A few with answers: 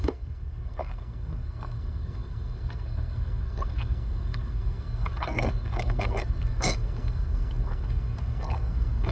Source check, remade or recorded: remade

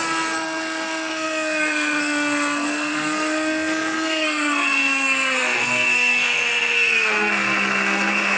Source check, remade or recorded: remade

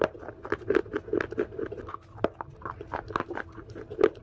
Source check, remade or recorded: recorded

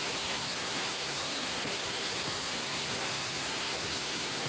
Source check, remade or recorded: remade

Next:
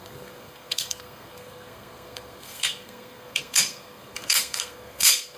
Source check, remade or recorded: remade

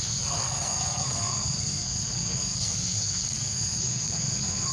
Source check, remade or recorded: remade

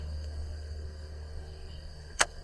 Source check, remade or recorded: remade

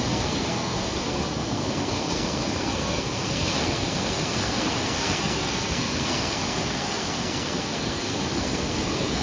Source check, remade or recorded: remade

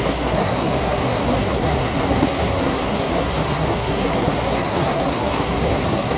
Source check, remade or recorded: remade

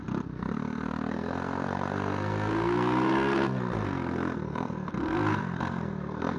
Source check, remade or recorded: remade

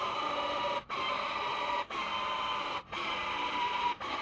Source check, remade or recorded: recorded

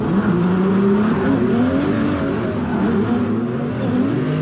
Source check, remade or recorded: recorded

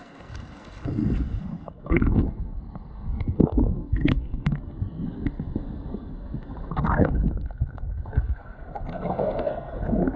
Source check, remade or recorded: remade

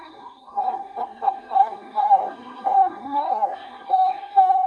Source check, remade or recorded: remade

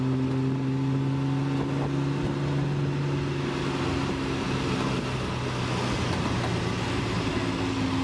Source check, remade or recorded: recorded